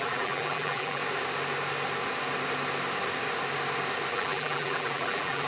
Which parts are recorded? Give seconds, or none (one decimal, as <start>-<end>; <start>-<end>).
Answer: 1.0-4.1